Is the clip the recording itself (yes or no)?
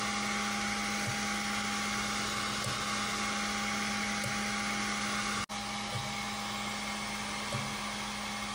yes